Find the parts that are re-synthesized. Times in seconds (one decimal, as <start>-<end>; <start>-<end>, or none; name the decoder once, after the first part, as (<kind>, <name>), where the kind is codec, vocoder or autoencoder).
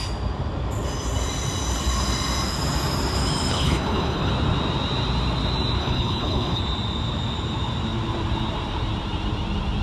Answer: 3.5-4.3 (codec, HILCodec); 5.8-6.6